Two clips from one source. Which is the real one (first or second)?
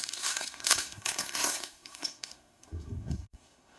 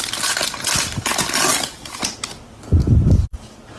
second